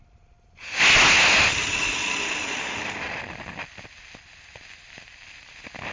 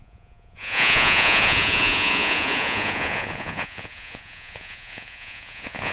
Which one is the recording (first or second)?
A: first